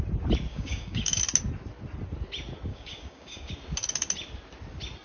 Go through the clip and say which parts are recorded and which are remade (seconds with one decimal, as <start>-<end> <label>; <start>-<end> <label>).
0.0-0.5 recorded; 0.5-1.2 remade; 1.2-2.7 recorded; 2.7-3.5 remade; 3.5-5.0 recorded